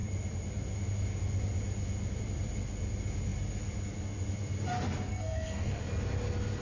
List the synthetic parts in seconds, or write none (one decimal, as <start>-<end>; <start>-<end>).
5.1-5.8